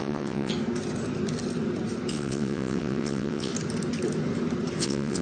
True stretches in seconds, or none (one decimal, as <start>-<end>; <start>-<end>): 0.5-2.1; 3.5-4.8